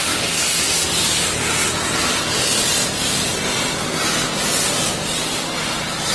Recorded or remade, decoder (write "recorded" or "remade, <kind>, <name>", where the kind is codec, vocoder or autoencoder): recorded